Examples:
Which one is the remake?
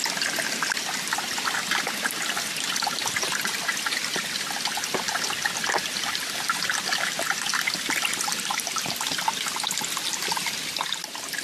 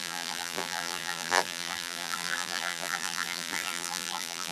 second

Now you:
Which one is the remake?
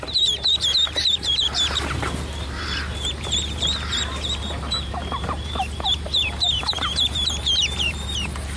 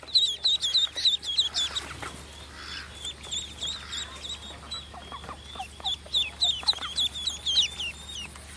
first